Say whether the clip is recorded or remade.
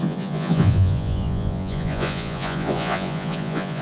remade